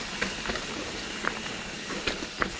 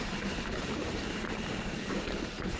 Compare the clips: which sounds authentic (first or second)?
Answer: first